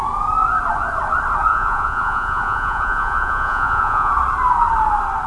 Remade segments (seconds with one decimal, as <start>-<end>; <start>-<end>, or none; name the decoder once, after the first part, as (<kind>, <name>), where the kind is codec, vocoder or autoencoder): 1.5-4.1 (vocoder, Vocos)